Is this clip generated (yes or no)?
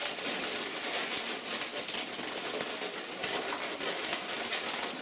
no